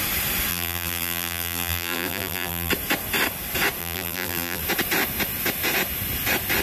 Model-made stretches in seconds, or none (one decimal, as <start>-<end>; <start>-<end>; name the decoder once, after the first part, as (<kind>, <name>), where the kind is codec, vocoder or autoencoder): 0.5-2.7 (vocoder, BigVGAN v2); 3.8-4.6